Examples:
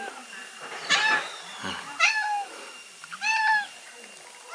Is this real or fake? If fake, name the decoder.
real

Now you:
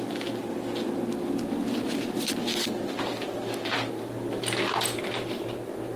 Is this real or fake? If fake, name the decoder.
real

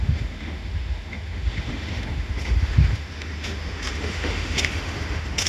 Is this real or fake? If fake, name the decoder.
fake, autoencoder, DAC-VAE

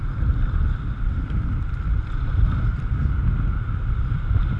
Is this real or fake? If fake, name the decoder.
real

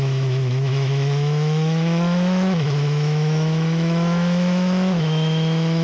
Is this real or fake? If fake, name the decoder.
fake, autoencoder, DAC-VAE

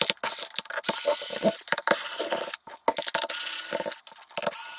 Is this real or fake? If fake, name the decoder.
real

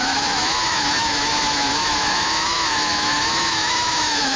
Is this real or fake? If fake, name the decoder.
fake, autoencoder, DAC-VAE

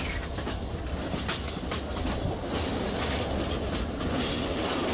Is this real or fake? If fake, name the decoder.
real